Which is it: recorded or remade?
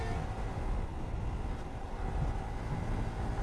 recorded